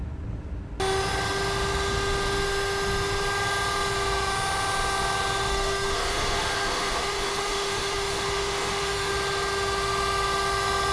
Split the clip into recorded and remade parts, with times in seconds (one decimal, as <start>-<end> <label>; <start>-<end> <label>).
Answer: 0.0-5.5 recorded; 5.5-9.1 remade; 9.1-10.9 recorded